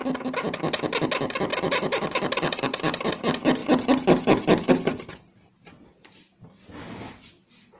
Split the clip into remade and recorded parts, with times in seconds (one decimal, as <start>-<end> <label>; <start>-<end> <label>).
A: 0.0-1.5 recorded; 1.5-3.1 remade; 3.1-7.8 recorded